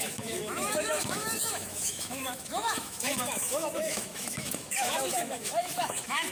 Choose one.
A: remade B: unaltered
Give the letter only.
A